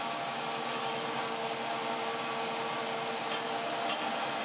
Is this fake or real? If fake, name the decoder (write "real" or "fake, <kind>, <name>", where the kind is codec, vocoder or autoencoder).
real